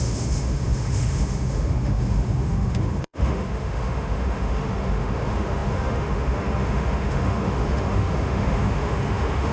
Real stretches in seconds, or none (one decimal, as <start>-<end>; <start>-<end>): none